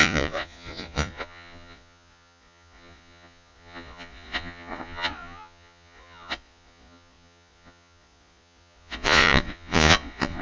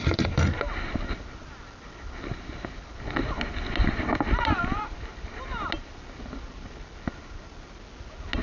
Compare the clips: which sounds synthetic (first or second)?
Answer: first